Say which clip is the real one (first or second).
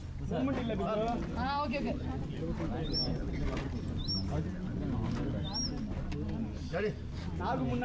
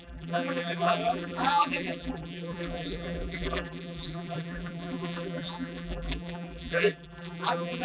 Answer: first